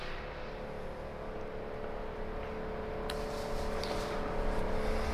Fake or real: real